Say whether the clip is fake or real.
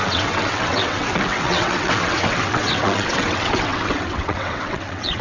fake